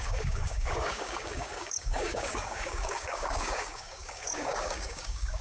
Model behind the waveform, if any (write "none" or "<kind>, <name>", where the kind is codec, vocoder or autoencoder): codec, DAC